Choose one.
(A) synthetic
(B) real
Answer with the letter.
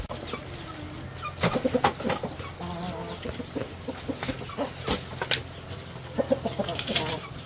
B